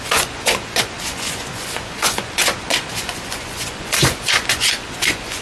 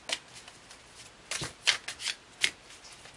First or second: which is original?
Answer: second